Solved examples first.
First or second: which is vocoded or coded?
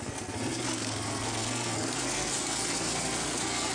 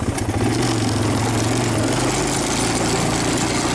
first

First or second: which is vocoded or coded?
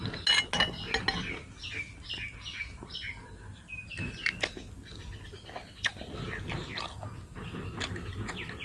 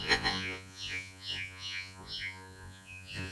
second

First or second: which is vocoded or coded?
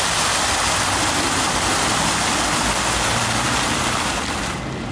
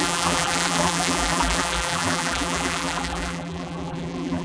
second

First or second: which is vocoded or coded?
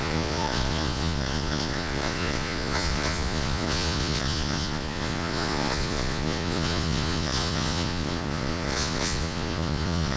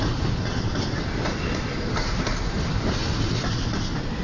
first